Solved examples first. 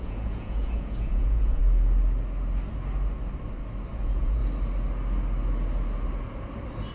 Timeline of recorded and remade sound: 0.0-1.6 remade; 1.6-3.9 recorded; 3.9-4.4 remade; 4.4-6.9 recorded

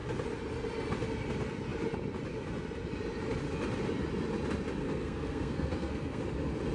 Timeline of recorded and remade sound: 0.0-4.8 recorded; 4.8-6.2 remade; 6.2-6.7 recorded

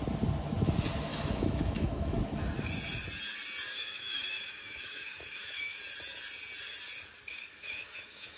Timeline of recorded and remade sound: 0.0-1.1 recorded; 1.1-2.2 remade; 2.2-3.8 recorded; 3.8-5.8 remade; 5.8-7.3 recorded; 7.3-8.4 remade

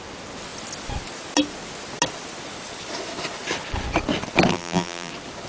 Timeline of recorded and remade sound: 0.0-4.5 recorded; 4.5-5.1 remade; 5.1-5.5 recorded

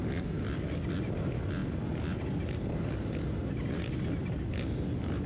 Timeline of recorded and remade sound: 0.0-5.3 recorded

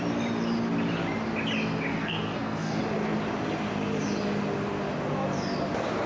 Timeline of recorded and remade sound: 0.0-1.9 recorded; 1.9-2.8 remade; 2.8-6.1 recorded